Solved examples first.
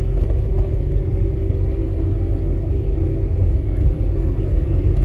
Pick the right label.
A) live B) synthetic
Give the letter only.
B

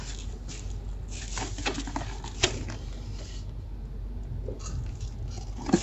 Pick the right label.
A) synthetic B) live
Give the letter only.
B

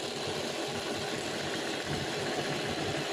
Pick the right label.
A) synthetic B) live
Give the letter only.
B